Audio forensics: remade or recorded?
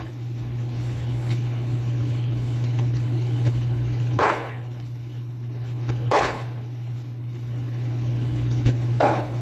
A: remade